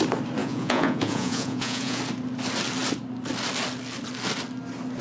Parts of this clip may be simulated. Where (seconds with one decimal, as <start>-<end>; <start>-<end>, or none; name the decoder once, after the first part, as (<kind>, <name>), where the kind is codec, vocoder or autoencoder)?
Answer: 0.4-2.0 (vocoder, Vocos)